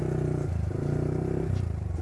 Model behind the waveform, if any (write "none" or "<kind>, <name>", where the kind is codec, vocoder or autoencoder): vocoder, BigVGAN v2